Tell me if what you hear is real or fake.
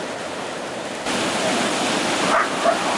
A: real